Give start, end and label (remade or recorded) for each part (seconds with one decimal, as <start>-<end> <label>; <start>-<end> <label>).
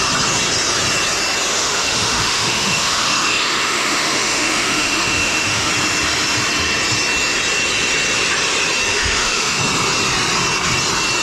0.0-1.5 recorded; 1.5-5.7 remade; 5.7-8.9 recorded; 8.9-9.6 remade; 9.6-11.2 recorded